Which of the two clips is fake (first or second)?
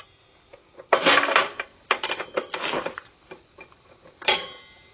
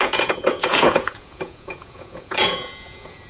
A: second